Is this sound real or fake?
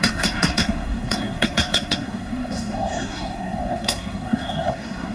fake